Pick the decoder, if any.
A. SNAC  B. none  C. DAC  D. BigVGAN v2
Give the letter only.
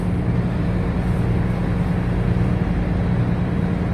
B